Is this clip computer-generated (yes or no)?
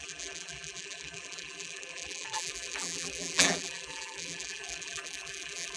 yes